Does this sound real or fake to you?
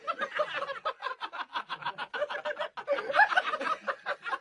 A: real